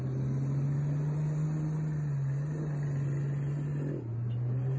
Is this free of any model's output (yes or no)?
yes